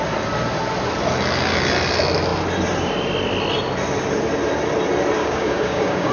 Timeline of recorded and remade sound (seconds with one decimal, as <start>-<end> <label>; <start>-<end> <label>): 0.0-5.2 recorded; 5.2-6.1 remade